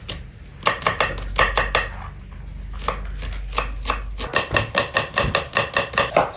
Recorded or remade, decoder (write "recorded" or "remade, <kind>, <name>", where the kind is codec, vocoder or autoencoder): recorded